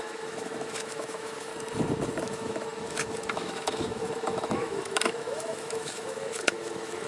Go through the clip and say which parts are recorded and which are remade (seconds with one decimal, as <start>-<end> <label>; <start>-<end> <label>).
0.0-1.5 remade; 1.5-2.2 recorded; 2.2-7.1 remade